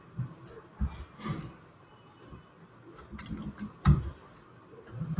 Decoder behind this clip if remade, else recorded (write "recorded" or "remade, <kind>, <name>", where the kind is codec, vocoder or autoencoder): recorded